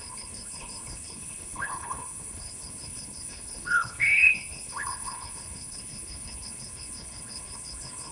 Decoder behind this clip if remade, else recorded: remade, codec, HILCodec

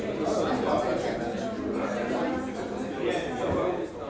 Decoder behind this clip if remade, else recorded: recorded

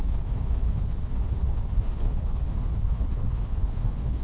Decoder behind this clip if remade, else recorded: remade, codec, HILCodec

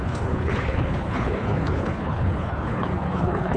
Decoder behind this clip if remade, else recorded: remade, codec, HILCodec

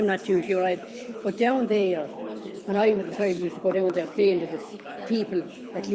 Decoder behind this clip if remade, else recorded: remade, codec, HILCodec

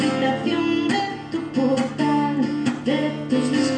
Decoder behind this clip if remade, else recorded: recorded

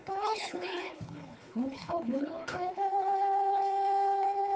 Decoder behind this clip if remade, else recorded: remade, codec, HILCodec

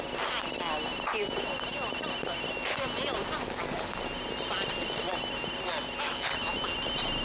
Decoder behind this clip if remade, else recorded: recorded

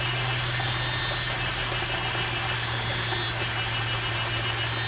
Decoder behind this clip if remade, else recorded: recorded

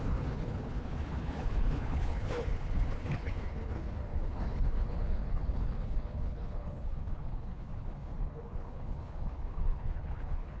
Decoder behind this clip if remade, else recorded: remade, codec, HILCodec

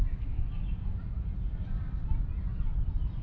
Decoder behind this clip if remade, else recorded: recorded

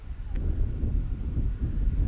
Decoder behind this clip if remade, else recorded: recorded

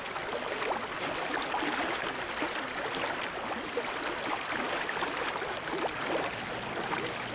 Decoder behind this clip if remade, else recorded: recorded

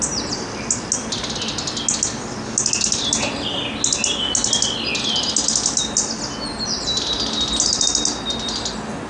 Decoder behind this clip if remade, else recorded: recorded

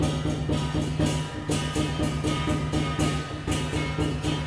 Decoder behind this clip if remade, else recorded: recorded